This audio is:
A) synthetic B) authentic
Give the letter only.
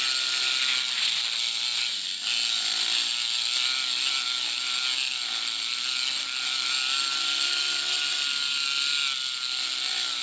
B